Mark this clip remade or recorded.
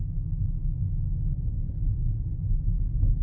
recorded